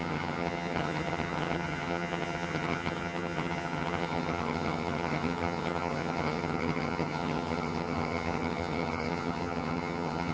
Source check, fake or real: fake